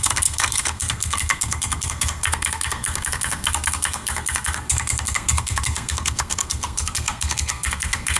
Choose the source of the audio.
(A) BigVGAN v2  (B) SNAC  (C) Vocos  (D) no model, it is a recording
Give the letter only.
B